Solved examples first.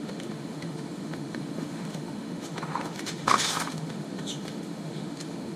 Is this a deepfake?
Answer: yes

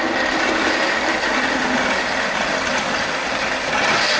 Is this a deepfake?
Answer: no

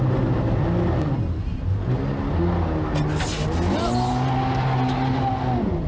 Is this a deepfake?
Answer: no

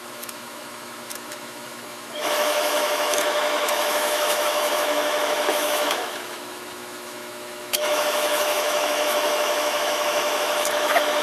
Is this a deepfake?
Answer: yes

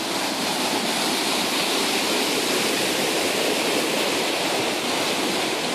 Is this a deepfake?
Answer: no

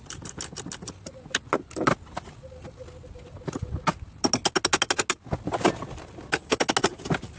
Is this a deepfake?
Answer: no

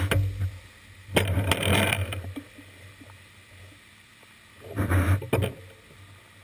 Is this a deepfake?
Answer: no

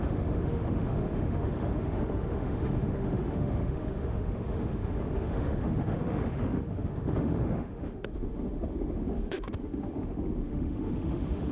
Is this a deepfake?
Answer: yes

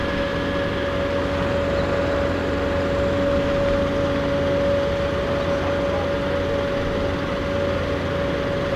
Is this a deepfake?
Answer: no